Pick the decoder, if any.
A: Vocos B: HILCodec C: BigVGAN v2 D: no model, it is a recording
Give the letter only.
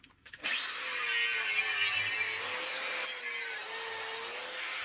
D